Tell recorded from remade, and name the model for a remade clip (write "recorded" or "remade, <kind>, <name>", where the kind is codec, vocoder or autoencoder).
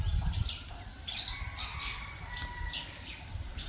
recorded